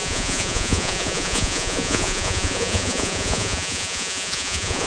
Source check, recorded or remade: remade